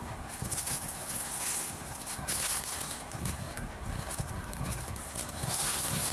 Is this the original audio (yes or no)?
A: no